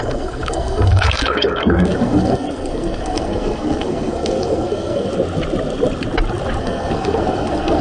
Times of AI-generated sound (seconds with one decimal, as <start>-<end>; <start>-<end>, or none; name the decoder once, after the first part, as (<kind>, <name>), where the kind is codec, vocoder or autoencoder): 0.0-5.1 (codec, SNAC); 6.6-7.8